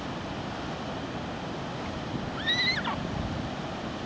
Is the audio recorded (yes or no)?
yes